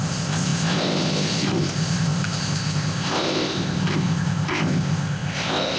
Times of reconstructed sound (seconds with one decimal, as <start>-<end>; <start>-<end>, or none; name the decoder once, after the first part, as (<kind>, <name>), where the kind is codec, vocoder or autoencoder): 0.0-5.8 (codec, ZipCodec)